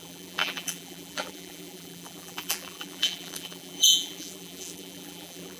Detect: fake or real fake